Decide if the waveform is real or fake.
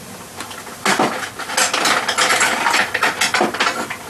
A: real